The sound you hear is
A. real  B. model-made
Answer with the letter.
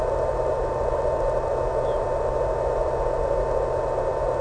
A